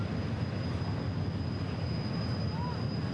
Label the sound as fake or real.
real